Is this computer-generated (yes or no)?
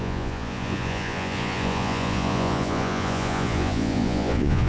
yes